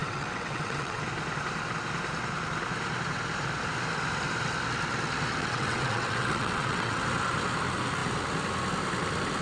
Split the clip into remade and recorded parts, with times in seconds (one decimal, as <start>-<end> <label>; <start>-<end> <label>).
0.0-1.0 remade; 1.0-5.4 recorded; 5.4-7.0 remade; 7.0-9.4 recorded